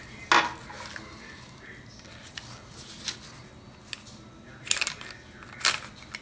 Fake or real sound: real